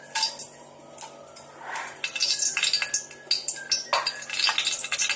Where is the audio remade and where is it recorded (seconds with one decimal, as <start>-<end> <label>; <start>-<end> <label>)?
0.0-5.2 recorded